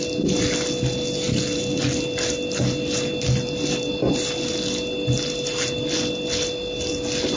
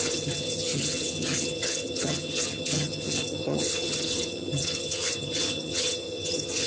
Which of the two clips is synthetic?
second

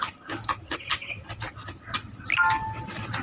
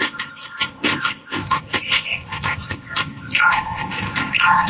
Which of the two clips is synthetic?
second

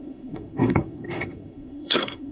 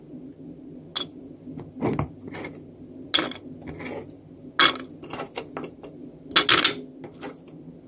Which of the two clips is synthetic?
first